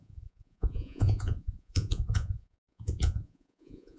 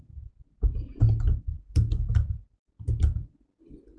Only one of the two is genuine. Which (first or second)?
second